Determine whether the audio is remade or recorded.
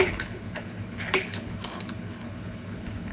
remade